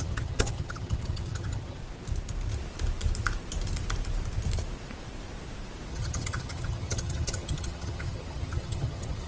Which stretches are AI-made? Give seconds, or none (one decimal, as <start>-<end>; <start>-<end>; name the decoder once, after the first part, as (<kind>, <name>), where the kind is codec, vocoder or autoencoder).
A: 0.0-1.8 (vocoder, HiFi-GAN); 5.9-9.3